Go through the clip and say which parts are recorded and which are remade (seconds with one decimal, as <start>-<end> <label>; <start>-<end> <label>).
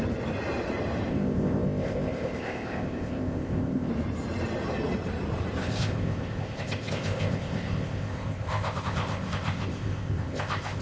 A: 0.0-1.1 recorded; 1.1-3.9 remade; 3.9-5.6 recorded; 5.6-10.8 remade